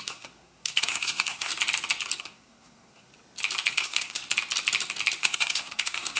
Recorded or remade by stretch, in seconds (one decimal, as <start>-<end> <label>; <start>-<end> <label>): 0.0-1.5 remade; 1.5-2.2 recorded; 2.2-3.1 remade; 3.1-3.7 recorded; 3.7-4.2 remade; 4.2-5.2 recorded; 5.2-6.2 remade